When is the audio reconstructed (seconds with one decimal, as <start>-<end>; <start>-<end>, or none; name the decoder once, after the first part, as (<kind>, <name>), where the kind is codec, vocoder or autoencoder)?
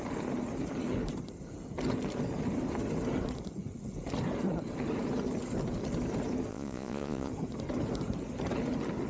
6.5-7.3 (vocoder, Vocos)